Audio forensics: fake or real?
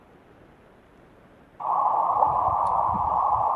real